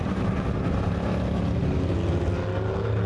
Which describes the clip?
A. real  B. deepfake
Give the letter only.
A